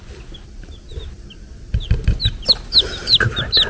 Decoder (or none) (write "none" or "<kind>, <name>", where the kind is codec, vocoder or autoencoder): none